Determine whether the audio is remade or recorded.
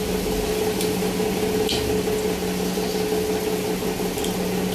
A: recorded